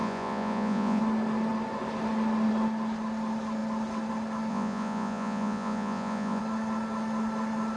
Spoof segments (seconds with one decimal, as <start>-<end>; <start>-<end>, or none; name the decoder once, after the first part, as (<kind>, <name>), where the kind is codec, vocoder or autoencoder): 0.0-1.0 (vocoder, Vocos); 4.5-6.4